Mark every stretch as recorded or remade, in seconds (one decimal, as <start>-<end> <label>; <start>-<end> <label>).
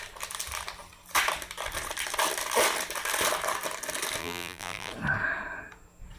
0.0-4.2 recorded; 4.2-4.9 remade; 4.9-6.2 recorded